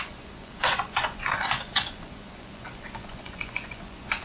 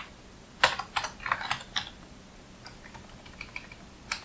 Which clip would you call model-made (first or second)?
first